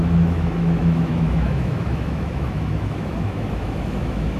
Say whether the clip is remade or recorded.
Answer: remade